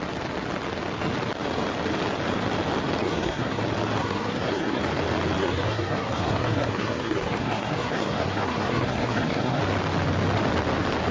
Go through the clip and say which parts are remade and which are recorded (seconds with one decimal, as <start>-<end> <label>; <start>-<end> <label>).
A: 0.0-3.0 recorded; 3.0-3.6 remade; 3.6-4.0 recorded; 4.0-4.8 remade; 4.8-5.4 recorded; 5.4-9.6 remade; 9.6-11.1 recorded